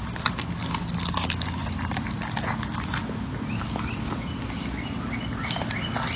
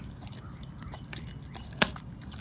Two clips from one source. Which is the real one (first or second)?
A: first